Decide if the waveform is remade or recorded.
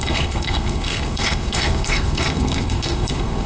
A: remade